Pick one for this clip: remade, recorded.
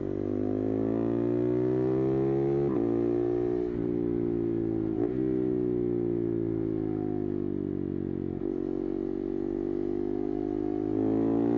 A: recorded